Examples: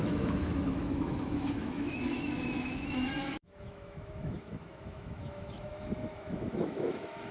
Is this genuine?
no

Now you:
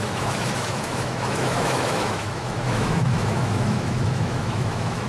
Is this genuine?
no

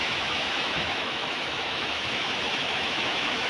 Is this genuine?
no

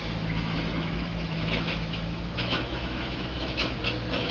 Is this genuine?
no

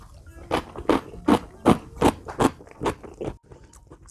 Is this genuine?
yes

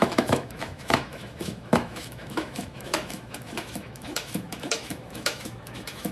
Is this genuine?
no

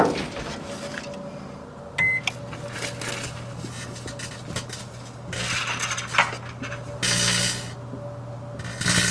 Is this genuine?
yes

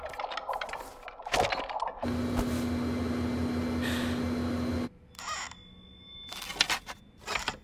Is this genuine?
yes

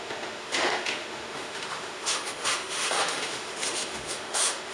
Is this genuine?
no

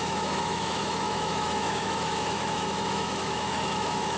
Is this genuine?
no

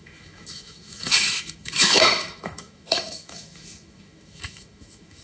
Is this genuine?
no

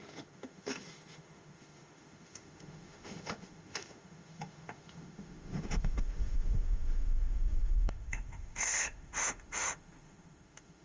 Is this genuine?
no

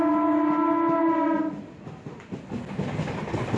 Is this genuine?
yes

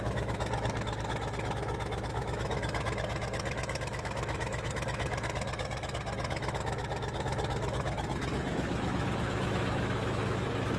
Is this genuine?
no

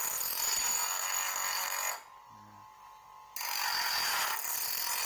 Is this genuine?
yes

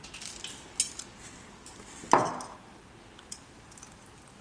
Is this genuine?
yes